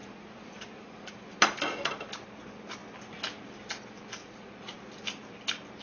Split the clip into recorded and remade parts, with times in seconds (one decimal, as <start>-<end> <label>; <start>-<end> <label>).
0.0-1.1 remade; 1.1-4.2 recorded; 4.2-4.8 remade; 4.8-5.8 recorded

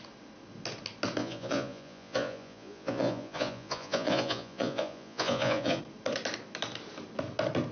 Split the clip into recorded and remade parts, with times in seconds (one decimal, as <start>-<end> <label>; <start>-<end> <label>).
0.0-1.2 recorded; 1.2-5.8 remade; 5.8-7.7 recorded

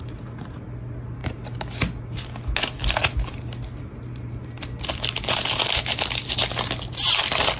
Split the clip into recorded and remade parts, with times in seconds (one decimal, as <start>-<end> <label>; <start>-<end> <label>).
0.0-7.6 recorded